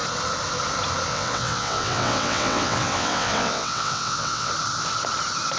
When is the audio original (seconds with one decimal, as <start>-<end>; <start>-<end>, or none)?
0.0-1.1; 4.5-5.6